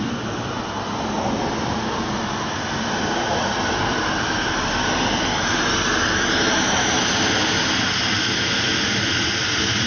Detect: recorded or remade recorded